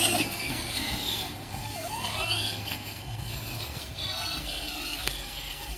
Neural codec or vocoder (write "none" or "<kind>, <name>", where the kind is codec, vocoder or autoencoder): codec, SNAC